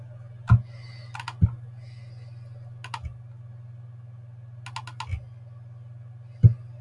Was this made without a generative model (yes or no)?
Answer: yes